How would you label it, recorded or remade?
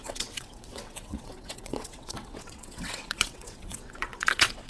remade